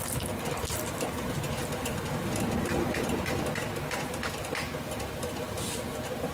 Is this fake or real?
real